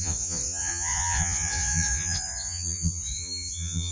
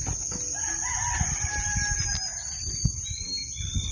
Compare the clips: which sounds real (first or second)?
second